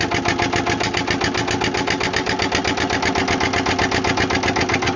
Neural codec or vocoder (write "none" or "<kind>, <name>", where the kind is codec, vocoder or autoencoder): none